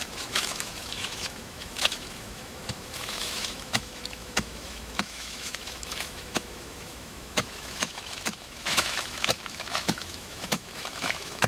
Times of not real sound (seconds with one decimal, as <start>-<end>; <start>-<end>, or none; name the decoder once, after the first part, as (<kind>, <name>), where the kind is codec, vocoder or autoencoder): 0.0-11.5 (autoencoder, DAC-VAE)